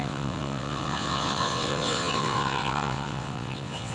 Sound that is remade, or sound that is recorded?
remade